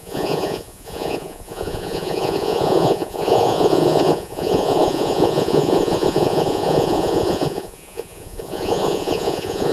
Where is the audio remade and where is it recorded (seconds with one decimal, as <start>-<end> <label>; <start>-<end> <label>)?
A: 0.0-9.7 remade